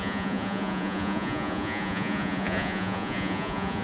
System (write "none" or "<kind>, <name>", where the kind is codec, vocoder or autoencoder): vocoder, Vocos